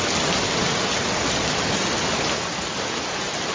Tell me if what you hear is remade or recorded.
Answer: recorded